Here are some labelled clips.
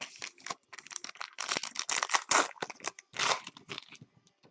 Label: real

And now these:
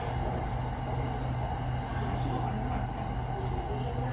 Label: real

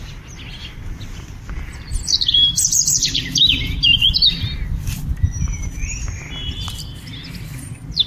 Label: real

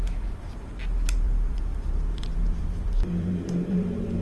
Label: fake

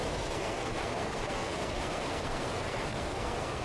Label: fake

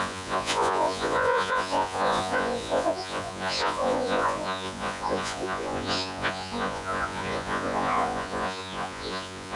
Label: fake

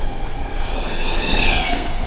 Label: fake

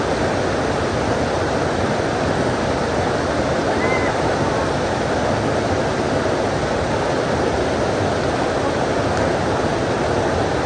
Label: real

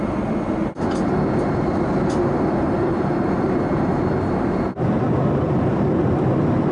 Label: real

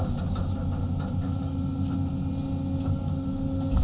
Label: real